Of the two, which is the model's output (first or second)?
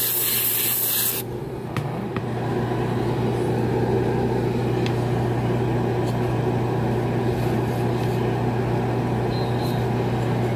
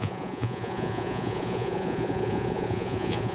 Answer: second